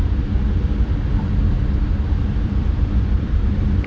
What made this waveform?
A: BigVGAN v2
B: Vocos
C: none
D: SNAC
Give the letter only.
A